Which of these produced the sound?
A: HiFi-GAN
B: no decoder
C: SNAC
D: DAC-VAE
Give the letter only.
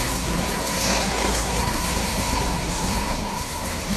C